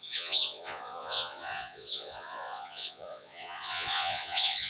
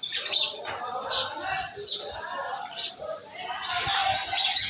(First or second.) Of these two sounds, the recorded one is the second